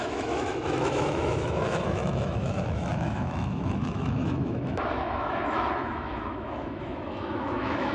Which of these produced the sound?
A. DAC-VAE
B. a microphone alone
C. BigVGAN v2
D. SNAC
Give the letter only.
A